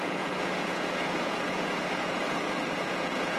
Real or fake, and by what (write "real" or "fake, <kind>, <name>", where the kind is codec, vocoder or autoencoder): fake, vocoder, Vocos